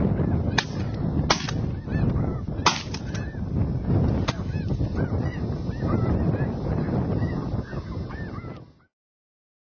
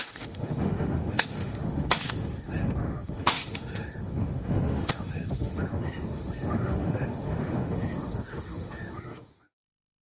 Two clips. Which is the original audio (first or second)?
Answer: first